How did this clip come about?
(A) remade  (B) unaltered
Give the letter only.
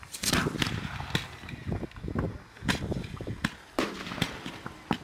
B